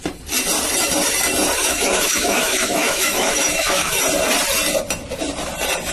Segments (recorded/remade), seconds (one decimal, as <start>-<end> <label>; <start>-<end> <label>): 0.0-1.6 recorded; 1.6-4.0 remade; 4.0-5.9 recorded